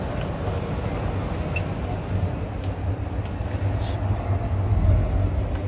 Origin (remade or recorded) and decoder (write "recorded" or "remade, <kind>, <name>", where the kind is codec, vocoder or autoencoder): recorded